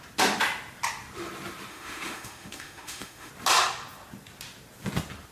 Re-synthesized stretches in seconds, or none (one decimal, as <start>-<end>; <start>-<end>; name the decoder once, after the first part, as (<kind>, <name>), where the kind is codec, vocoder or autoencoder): 1.7-3.3 (autoencoder, DAC-VAE)